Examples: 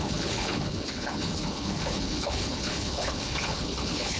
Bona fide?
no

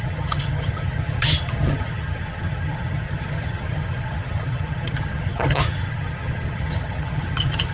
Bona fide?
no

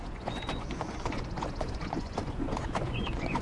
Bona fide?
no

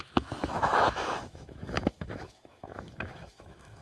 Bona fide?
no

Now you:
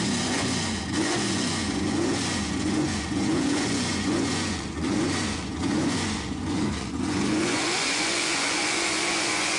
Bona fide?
no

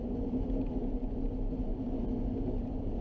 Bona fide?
yes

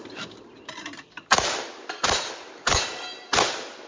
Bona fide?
no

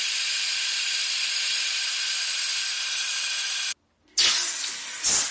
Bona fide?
yes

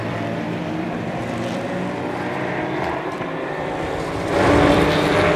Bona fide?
no